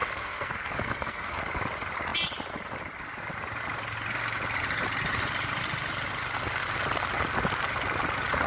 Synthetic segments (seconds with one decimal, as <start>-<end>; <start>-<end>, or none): 0.0-1.4